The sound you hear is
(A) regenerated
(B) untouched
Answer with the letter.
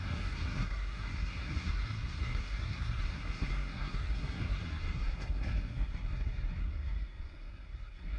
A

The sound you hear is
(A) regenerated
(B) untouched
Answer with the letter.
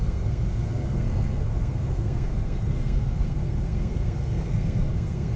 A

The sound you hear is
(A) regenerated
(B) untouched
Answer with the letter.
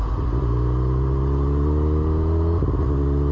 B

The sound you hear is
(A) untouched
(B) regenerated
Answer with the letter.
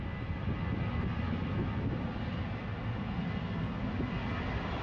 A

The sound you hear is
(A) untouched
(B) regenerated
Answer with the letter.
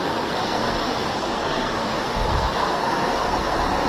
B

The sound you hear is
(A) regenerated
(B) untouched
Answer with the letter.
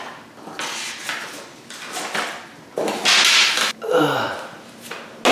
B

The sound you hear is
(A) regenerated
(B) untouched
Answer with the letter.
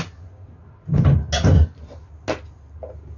B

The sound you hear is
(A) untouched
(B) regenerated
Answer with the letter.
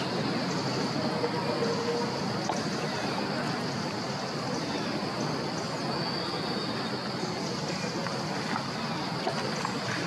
A